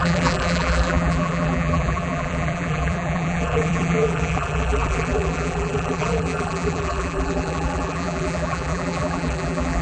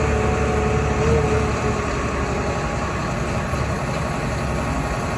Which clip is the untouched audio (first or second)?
second